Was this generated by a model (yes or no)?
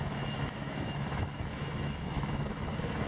yes